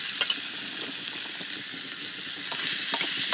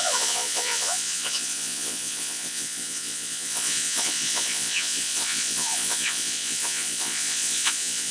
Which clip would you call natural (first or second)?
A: first